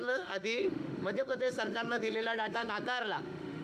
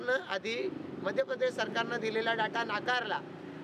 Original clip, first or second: second